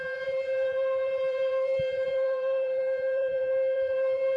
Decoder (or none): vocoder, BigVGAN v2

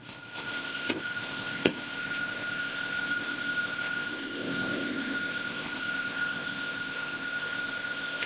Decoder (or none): codec, ZipCodec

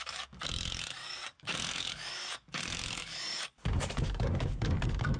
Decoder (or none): codec, DAC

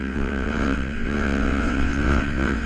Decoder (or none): vocoder, WaveNeXt